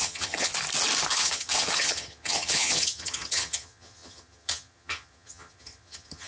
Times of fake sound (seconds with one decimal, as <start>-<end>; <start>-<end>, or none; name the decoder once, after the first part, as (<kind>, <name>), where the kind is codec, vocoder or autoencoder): 0.0-0.5 (vocoder, HiFi-GAN); 1.1-6.3